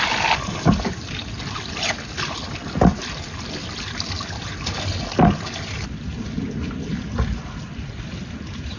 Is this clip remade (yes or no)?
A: no